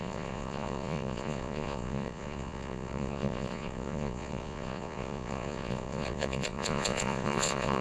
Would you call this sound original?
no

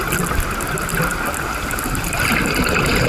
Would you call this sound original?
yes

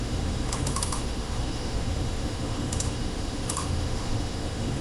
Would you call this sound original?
no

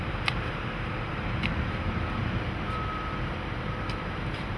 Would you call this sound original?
no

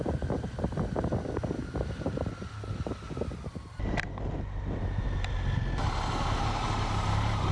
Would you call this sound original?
yes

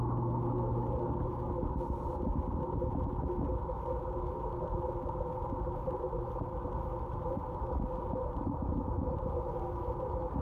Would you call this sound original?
yes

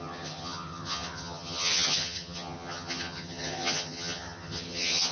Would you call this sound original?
no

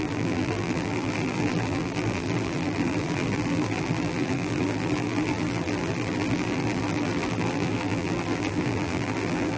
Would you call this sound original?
no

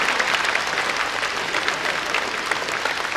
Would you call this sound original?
yes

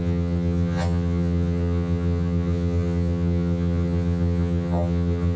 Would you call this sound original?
no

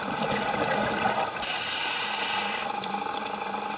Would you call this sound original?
no